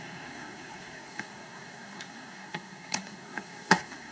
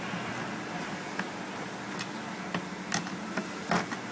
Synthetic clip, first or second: first